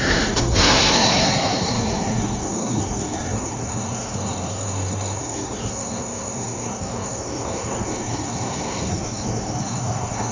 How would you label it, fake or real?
fake